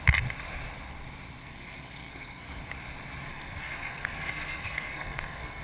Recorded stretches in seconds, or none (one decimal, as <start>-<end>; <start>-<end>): 0.0-1.4; 2.6-3.3